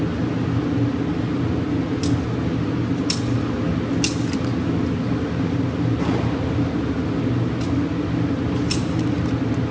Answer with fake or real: real